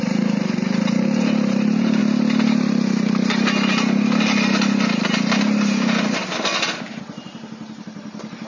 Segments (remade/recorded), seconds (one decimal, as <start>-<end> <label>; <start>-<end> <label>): 0.0-2.0 remade; 2.0-7.0 recorded; 7.0-8.5 remade